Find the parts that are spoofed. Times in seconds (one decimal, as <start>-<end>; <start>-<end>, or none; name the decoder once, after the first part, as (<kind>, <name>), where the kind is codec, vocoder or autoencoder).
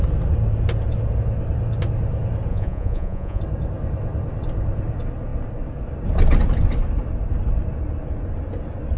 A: 2.5-3.4 (vocoder, Vocos)